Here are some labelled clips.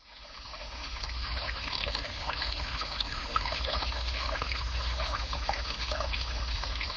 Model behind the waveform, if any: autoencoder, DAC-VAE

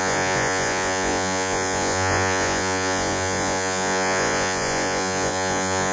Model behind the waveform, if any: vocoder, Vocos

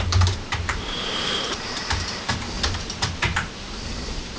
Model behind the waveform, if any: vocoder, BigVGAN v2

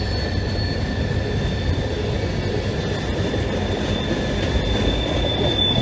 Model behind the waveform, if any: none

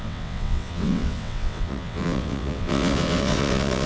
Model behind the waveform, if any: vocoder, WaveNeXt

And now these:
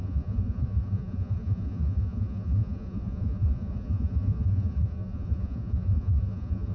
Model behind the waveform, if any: vocoder, Vocos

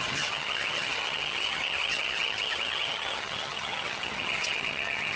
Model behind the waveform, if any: vocoder, HiFi-GAN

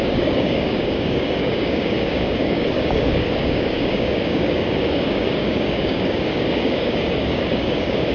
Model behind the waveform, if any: codec, DAC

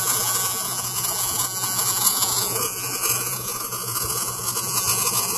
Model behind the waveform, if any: vocoder, Vocos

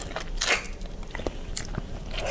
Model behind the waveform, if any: none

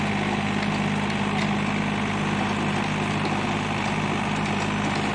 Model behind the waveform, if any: none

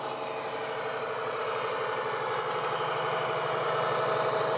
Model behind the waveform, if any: none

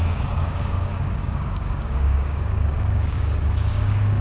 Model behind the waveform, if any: codec, DAC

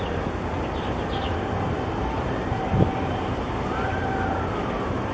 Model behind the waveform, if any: vocoder, BigVGAN v2